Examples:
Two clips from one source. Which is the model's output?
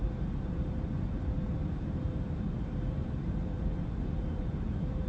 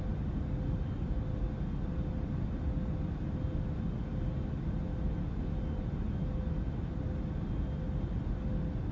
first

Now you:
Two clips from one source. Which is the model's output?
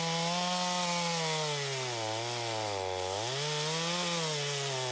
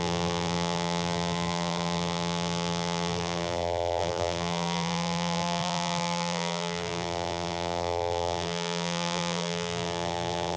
second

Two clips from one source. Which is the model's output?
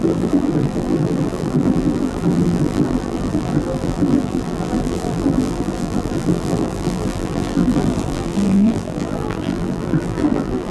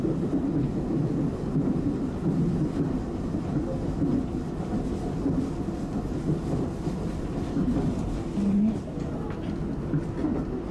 first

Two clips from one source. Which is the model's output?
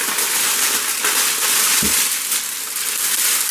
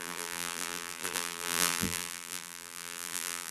second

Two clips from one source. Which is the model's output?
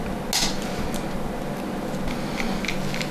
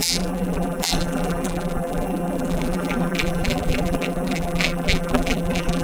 second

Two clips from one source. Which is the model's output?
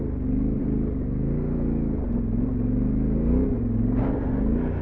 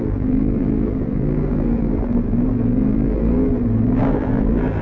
second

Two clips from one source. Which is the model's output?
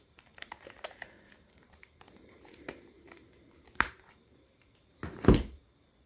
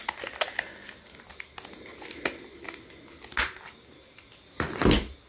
first